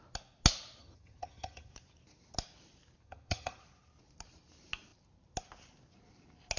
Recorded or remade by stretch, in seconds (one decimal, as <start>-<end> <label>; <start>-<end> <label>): 0.0-0.8 recorded; 0.8-1.7 remade; 1.7-3.0 recorded; 3.0-3.6 remade; 3.6-6.6 recorded